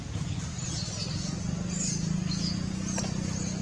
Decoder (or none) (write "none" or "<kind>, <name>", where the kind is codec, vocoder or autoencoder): none